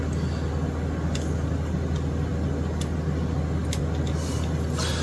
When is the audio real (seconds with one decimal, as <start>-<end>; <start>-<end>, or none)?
0.0-5.0